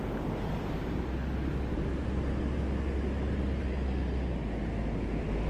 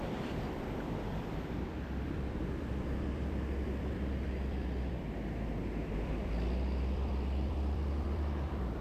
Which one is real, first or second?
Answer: first